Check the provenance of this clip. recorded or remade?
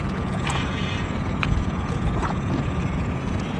remade